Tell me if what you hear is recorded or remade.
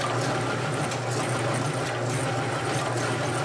recorded